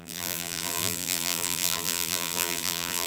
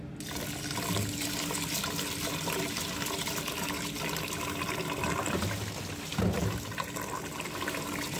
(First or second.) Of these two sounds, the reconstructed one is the first